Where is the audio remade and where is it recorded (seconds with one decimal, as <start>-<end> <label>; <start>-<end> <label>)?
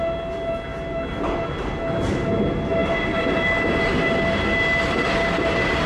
0.0-5.9 recorded